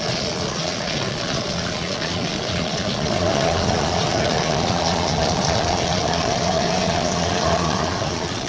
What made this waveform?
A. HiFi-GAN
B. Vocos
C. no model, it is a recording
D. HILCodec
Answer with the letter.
B